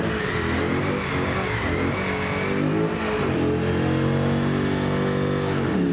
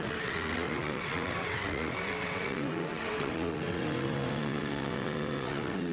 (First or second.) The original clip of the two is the first